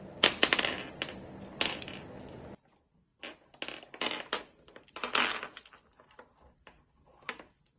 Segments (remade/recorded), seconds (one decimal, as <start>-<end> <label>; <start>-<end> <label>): 0.0-7.8 recorded

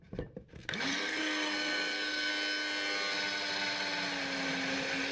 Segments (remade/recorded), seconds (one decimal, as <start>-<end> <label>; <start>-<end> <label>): 0.0-0.9 recorded; 0.9-2.3 remade; 2.3-5.1 recorded

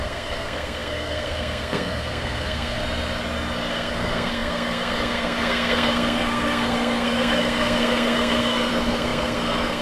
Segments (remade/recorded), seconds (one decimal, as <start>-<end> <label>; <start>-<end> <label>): 0.0-2.8 remade; 2.8-3.7 recorded; 3.7-9.8 remade

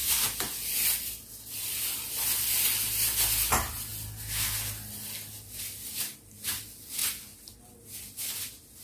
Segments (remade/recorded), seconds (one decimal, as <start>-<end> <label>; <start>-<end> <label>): 0.0-8.8 recorded

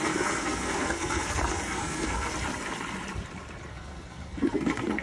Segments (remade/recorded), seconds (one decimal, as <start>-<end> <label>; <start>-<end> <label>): 0.0-2.3 remade; 2.3-3.7 recorded; 3.7-5.0 remade